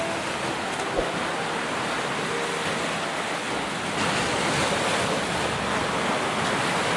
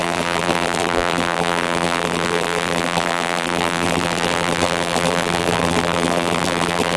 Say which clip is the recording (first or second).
first